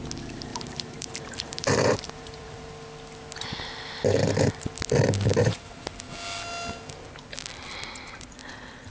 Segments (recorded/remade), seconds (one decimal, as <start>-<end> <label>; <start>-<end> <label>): 0.0-0.5 recorded; 0.5-2.7 remade; 2.7-5.3 recorded; 5.3-5.8 remade; 5.8-8.9 recorded